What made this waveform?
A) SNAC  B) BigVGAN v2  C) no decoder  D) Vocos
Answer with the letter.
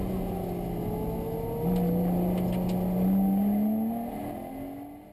C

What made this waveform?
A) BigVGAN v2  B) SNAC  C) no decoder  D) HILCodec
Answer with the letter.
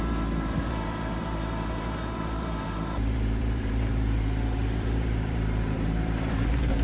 A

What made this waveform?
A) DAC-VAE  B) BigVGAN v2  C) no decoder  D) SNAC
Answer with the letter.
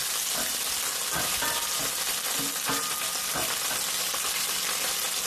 C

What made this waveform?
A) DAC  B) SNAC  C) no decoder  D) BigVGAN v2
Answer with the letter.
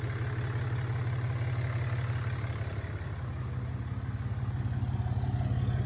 C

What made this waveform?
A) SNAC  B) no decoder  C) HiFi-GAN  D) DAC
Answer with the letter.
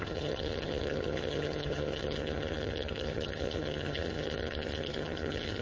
C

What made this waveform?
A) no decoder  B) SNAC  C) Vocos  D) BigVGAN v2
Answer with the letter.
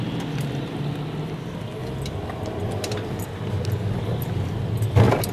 A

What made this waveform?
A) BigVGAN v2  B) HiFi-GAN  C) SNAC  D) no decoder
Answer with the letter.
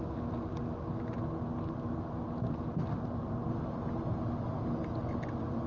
D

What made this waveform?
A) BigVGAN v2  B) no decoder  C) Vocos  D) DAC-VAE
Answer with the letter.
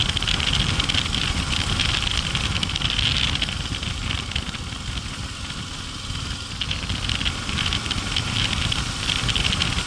B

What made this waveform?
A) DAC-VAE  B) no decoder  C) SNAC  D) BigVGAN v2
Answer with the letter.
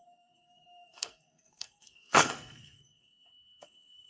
C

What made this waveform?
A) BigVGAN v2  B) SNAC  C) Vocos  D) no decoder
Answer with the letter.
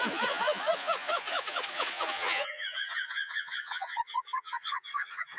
C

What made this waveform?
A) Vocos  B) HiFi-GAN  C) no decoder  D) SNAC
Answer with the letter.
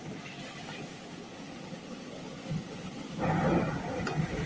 C